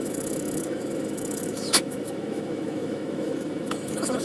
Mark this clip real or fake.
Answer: fake